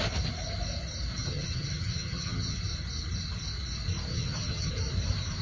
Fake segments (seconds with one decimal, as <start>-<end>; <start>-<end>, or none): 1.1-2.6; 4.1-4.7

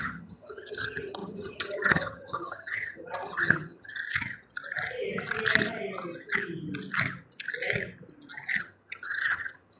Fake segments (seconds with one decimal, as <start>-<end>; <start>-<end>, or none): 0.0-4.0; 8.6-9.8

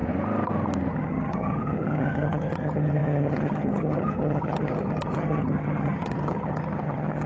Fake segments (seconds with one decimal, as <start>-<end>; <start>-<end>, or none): 0.9-7.3

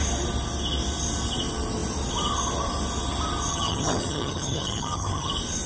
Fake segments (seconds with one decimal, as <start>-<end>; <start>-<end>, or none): 3.5-5.3